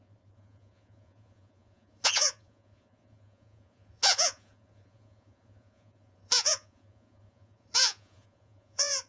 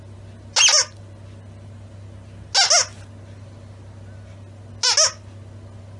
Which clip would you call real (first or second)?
second